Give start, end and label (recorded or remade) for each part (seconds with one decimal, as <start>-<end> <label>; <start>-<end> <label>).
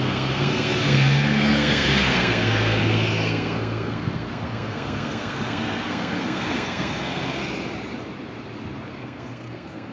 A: 0.0-7.4 remade; 7.4-8.9 recorded; 8.9-9.9 remade